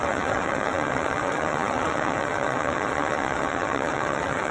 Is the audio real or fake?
fake